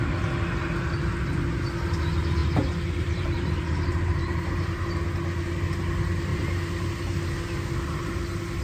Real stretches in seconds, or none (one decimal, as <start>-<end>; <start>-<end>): 0.0-2.4; 4.8-6.3; 6.9-8.6

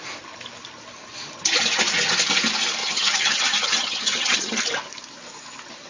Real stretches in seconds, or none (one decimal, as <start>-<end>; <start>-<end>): 0.0-2.8; 4.6-5.9

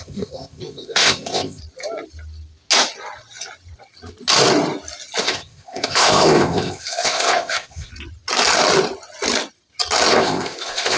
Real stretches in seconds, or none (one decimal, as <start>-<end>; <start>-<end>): 1.6-5.2; 7.9-10.1

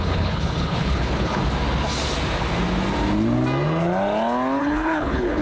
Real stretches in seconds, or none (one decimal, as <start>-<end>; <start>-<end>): 1.4-4.6

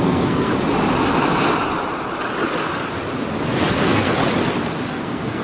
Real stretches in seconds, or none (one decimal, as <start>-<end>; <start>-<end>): 0.5-3.7; 4.2-4.9

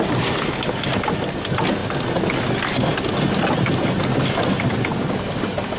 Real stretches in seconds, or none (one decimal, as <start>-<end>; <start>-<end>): 0.0-5.8